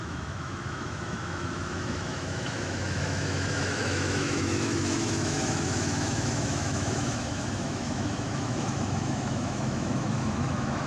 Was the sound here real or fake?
fake